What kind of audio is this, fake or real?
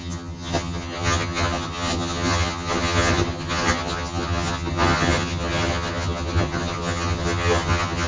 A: fake